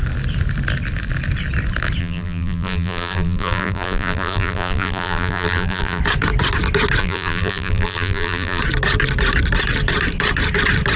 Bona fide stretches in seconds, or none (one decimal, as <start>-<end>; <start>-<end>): 0.0-2.0; 6.0-7.0; 8.6-11.0